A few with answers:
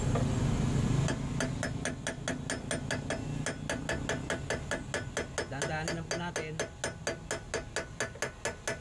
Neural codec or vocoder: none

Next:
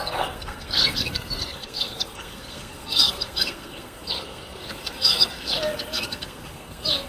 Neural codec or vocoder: codec, SNAC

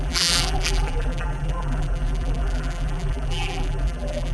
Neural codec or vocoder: vocoder, BigVGAN v2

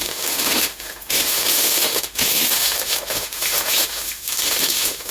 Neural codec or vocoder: autoencoder, DAC-VAE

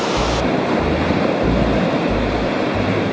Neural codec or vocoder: vocoder, BigVGAN v2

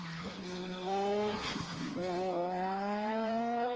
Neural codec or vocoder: codec, SNAC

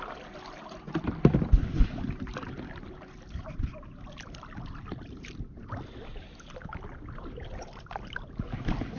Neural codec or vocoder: none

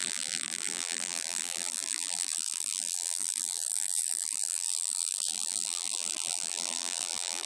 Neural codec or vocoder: vocoder, BigVGAN v2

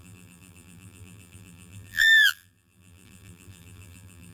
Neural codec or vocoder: vocoder, BigVGAN v2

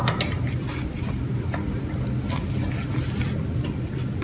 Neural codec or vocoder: none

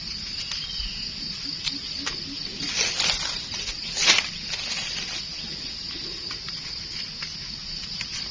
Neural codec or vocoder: none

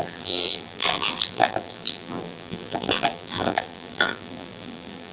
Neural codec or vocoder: vocoder, BigVGAN v2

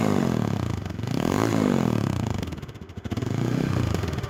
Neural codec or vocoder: autoencoder, DAC-VAE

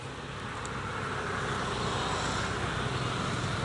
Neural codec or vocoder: none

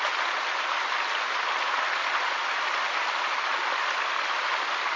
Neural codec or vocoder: none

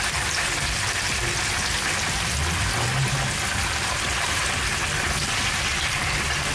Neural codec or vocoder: none